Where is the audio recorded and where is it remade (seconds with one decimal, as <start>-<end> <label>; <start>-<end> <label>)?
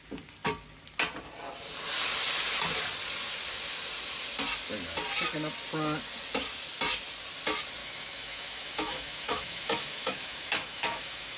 0.0-7.8 recorded; 7.8-11.4 remade